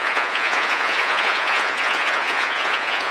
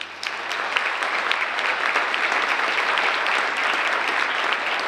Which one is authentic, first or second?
second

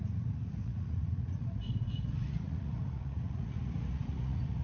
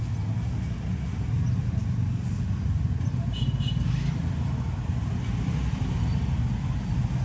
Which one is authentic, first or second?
second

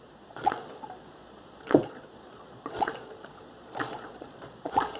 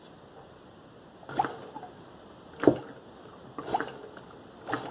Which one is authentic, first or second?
second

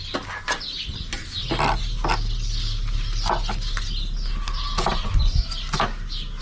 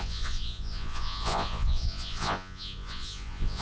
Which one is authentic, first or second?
first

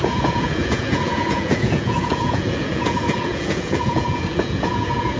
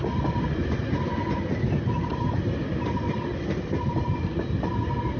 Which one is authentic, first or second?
second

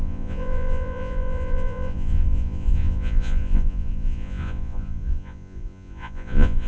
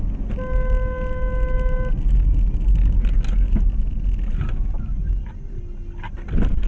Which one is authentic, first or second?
second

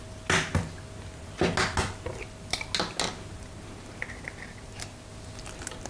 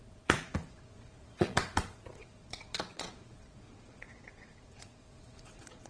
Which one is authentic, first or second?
first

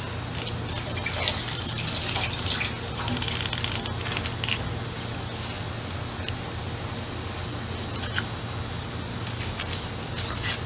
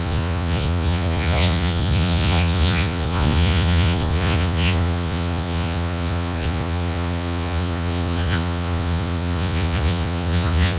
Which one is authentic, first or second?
first